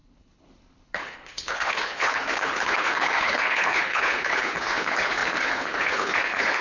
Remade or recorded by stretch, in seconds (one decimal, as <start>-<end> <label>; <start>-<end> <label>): 0.0-6.6 remade